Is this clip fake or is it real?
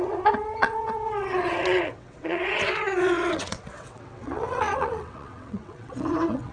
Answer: fake